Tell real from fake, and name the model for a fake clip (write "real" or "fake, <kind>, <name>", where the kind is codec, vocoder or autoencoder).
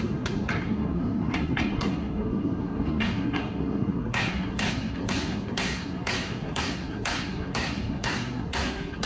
fake, codec, SNAC